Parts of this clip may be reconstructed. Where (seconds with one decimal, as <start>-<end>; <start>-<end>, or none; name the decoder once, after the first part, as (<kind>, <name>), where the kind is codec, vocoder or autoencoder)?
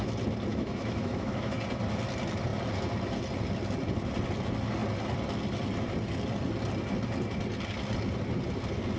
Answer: 0.5-1.6 (autoencoder, DAC-VAE)